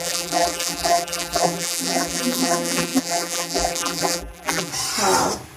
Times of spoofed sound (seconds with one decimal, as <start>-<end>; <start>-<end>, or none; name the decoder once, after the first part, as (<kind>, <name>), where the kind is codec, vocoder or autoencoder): 0.0-4.7 (vocoder, BigVGAN v2)